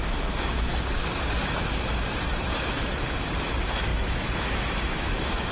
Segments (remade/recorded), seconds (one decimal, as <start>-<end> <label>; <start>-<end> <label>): 0.0-0.7 remade; 0.7-2.4 recorded; 2.4-2.9 remade; 2.9-3.4 recorded; 3.4-5.5 remade